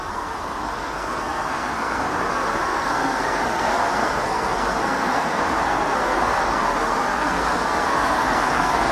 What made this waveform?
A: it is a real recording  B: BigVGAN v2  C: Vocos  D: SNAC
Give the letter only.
D